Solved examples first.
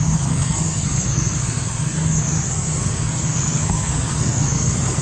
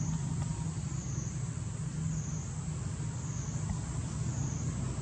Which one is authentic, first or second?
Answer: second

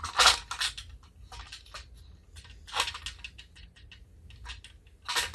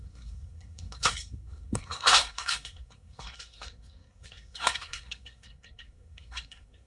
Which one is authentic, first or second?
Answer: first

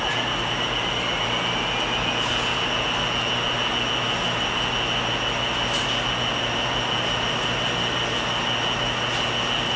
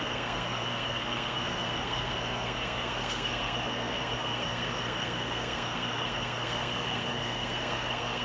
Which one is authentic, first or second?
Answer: first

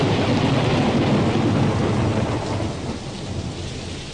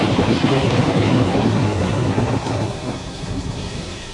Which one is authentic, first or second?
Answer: first